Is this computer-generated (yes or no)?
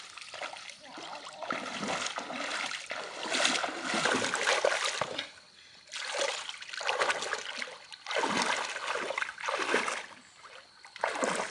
no